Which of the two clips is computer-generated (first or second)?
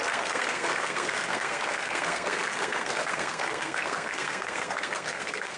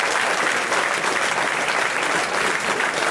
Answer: first